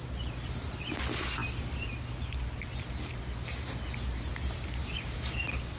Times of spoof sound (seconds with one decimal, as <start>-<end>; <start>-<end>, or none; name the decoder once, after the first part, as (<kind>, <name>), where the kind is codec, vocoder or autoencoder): 4.8-5.8 (codec, DAC)